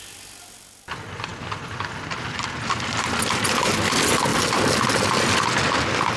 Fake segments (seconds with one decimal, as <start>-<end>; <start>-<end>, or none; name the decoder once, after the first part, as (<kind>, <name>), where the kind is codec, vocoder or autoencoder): 4.3-5.1 (vocoder, BigVGAN v2)